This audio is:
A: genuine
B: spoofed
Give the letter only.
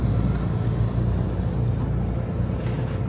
A